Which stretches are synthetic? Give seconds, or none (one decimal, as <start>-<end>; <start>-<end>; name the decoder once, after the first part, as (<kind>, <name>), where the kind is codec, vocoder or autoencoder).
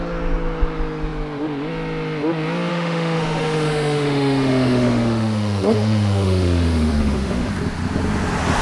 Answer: 2.7-7.5 (autoencoder, DAC-VAE)